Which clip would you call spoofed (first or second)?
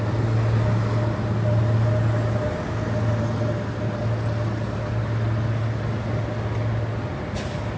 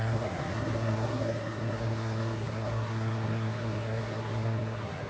second